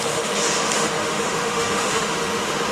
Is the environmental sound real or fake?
fake